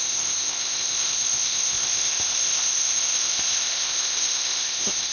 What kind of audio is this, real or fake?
fake